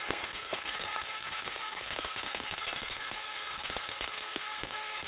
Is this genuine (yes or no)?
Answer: no